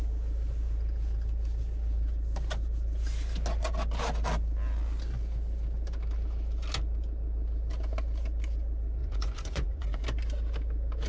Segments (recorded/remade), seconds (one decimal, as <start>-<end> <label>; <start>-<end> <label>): 0.0-9.0 recorded; 9.0-10.0 remade; 10.0-11.1 recorded

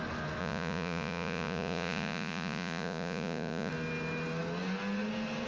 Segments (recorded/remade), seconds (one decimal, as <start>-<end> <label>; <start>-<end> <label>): 0.0-0.4 recorded; 0.4-3.7 remade; 3.7-5.5 recorded

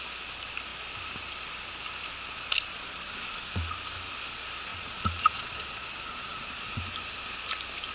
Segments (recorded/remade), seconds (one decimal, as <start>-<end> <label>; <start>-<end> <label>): 0.0-2.7 recorded; 2.7-3.7 remade; 3.7-4.7 recorded; 4.7-6.8 remade; 6.8-7.9 recorded

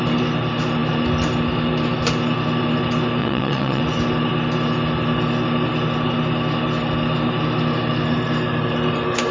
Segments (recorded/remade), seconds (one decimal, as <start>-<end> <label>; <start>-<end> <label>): 0.0-3.2 recorded; 3.2-3.8 remade; 3.8-9.3 recorded